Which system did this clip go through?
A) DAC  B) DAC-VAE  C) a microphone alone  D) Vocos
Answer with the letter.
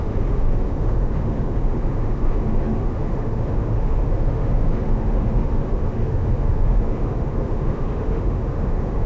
B